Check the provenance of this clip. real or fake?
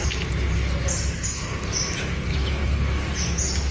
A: real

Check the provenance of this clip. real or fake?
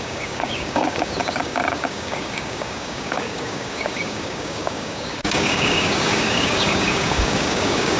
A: fake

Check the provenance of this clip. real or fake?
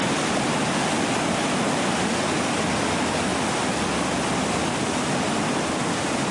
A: real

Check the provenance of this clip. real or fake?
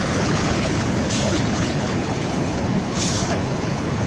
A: fake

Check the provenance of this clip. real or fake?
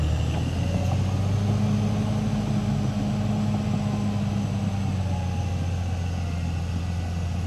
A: real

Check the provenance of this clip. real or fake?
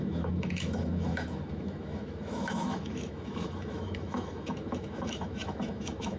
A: fake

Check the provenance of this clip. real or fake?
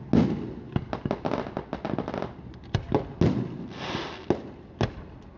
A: real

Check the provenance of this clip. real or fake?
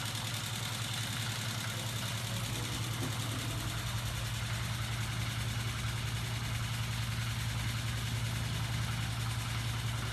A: real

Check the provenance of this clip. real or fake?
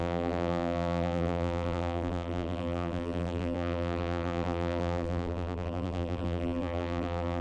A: fake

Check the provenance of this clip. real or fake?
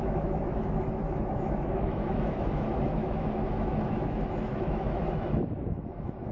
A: fake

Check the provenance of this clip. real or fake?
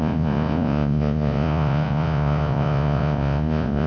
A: fake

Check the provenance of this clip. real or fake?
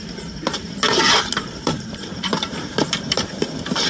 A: fake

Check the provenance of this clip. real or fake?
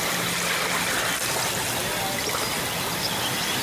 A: real